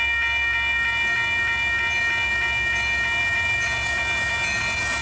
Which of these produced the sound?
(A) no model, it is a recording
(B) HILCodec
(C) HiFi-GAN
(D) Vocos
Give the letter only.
A